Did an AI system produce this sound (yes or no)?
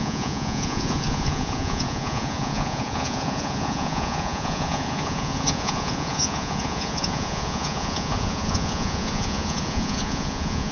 yes